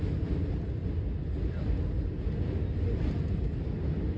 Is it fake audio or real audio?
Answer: real